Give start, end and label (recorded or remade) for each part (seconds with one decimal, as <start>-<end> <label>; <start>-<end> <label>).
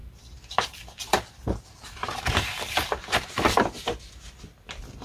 0.0-3.0 remade; 3.0-5.0 recorded